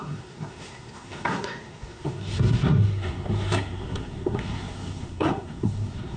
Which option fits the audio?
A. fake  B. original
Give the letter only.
A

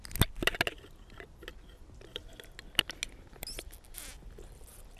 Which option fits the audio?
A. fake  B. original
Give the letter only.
B